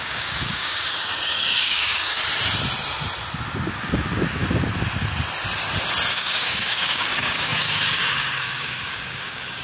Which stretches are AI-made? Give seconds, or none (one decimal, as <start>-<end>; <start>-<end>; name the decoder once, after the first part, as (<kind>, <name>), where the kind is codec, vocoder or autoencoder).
0.0-2.2 (codec, DAC); 3.7-4.4; 6.1-9.6